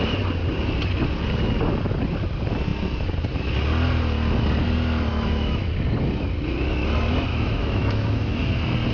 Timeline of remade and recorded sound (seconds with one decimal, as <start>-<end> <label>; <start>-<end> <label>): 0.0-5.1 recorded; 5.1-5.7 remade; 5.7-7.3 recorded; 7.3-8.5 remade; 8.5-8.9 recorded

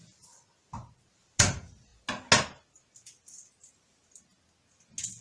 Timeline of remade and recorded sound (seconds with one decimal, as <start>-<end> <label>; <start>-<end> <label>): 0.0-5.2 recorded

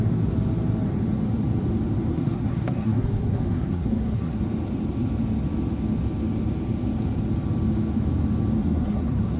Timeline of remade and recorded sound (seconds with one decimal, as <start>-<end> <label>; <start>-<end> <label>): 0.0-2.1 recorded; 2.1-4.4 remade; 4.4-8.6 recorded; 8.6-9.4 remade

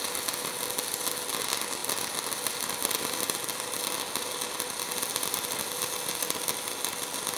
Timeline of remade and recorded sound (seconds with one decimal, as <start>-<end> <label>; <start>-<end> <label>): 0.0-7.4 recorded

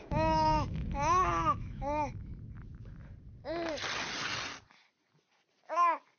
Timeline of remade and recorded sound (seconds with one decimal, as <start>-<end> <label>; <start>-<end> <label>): 0.0-2.3 remade; 2.3-6.2 recorded